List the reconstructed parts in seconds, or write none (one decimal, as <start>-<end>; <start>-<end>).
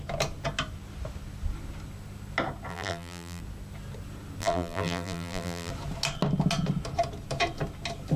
2.7-3.4; 4.4-5.7